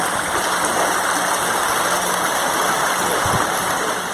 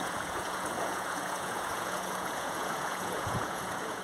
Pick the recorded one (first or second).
first